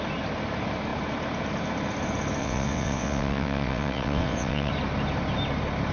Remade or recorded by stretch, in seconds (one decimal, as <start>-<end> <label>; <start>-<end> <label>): 0.0-2.4 recorded; 2.4-4.7 remade; 4.7-5.9 recorded